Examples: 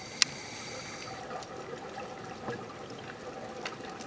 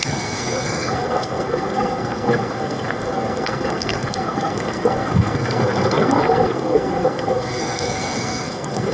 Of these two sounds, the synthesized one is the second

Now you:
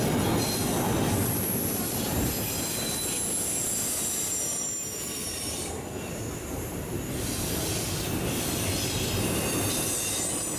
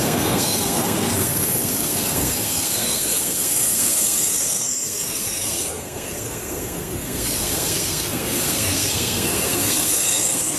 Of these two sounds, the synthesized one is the second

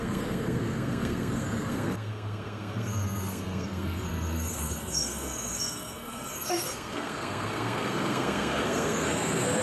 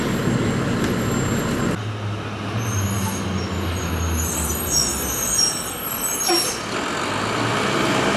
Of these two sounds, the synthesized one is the first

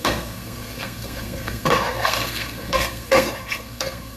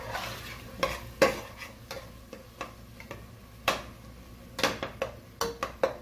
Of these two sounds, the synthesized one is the first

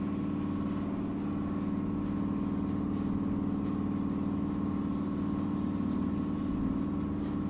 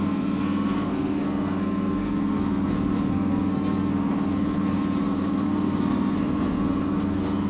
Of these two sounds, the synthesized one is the second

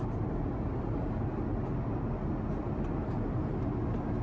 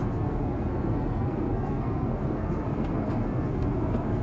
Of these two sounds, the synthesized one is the second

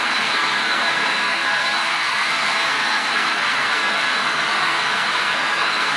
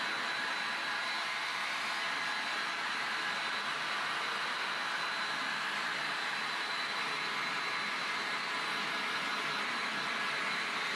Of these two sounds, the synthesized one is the first